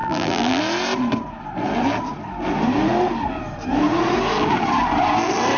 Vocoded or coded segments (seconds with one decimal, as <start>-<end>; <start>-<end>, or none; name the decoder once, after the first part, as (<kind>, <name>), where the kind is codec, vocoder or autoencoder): 0.0-0.6 (vocoder, BigVGAN v2)